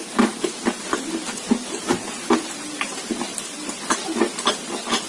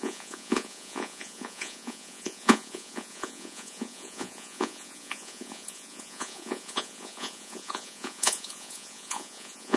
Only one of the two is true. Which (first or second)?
first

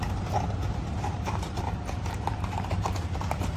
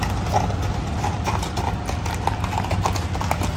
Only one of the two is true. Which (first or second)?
second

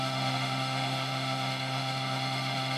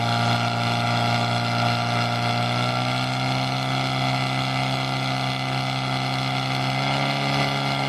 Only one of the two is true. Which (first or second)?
second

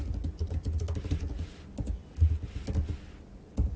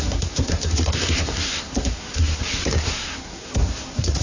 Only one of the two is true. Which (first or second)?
first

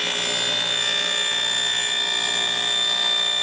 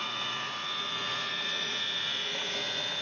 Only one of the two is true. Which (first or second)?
first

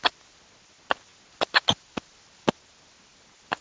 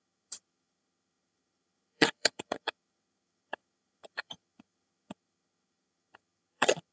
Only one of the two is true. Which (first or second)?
first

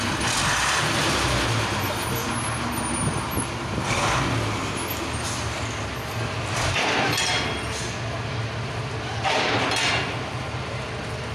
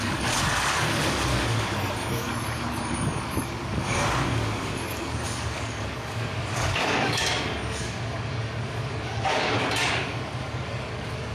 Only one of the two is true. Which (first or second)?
first